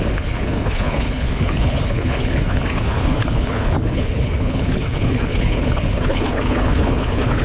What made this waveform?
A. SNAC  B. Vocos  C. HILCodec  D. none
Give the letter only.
C